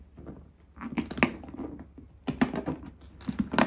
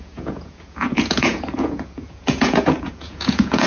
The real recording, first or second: first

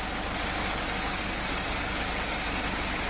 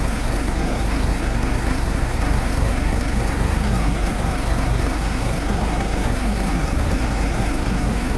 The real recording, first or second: first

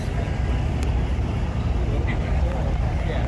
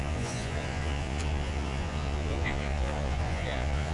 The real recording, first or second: first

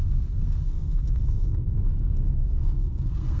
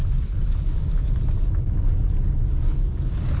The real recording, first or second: second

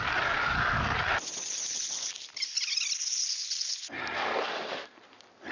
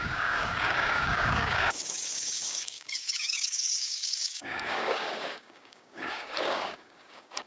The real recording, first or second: first